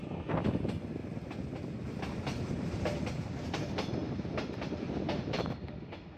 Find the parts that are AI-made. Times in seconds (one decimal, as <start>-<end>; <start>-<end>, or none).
none

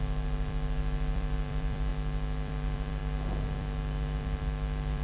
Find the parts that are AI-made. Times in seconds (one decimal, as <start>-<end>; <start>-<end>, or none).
0.0-5.0

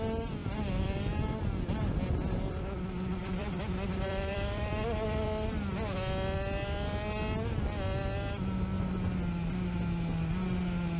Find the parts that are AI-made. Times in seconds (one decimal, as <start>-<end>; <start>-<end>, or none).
0.4-1.4; 3.2-5.9

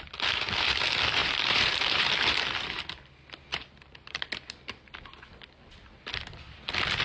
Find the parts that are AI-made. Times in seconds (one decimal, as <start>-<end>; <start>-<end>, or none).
1.2-2.4; 3.6-4.3

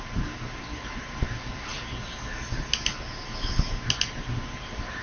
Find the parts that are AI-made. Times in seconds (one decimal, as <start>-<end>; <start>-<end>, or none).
none